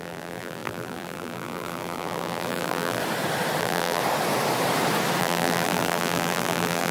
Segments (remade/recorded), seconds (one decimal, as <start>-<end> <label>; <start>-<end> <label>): 0.0-3.0 remade; 3.0-3.6 recorded; 3.6-4.0 remade; 4.0-5.2 recorded; 5.2-6.9 remade